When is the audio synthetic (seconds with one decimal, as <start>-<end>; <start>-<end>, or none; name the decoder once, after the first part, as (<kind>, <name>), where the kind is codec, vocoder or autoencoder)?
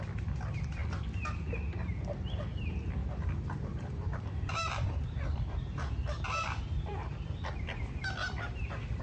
3.0-7.5 (vocoder, BigVGAN v2); 8.2-9.0